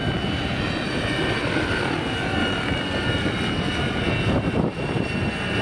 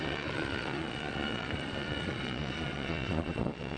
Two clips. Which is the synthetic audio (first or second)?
second